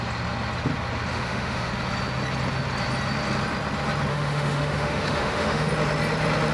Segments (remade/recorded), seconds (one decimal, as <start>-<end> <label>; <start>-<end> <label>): 0.0-1.1 recorded; 1.1-1.7 remade; 1.7-4.1 recorded; 4.1-5.7 remade; 5.7-6.5 recorded

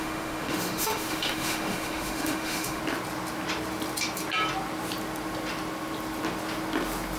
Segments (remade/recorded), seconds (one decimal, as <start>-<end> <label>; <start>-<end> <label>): 0.0-2.8 remade; 2.8-7.2 recorded

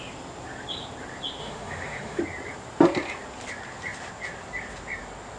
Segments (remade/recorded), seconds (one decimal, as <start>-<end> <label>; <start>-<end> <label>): 0.0-1.4 recorded; 1.4-2.2 remade; 2.2-5.4 recorded